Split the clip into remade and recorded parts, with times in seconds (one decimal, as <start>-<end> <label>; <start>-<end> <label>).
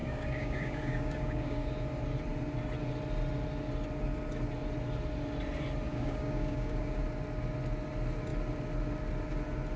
0.0-1.7 remade; 1.7-5.9 recorded; 5.9-7.0 remade; 7.0-9.8 recorded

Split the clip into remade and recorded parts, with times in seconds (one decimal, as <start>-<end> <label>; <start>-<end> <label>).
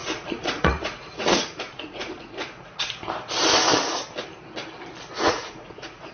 0.0-3.0 remade; 3.0-5.1 recorded; 5.1-6.1 remade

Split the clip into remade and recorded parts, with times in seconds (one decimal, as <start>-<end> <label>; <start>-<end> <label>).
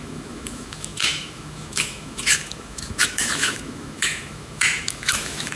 0.0-5.6 remade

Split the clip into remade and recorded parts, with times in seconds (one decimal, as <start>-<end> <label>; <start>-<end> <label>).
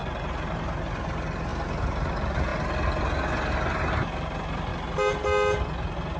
0.0-6.2 recorded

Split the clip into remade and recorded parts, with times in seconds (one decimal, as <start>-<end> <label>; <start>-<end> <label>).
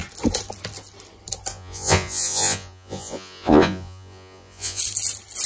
0.0-1.5 recorded; 1.5-4.8 remade; 4.8-5.5 recorded